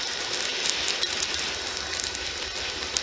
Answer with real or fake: real